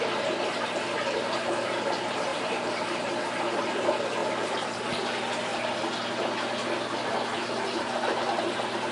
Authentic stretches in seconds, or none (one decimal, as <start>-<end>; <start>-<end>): 0.0-2.3; 3.1-4.2; 4.9-8.9